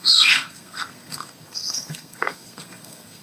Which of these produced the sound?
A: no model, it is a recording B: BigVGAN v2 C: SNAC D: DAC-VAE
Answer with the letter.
C